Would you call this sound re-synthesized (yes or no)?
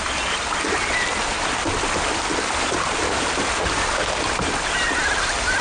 no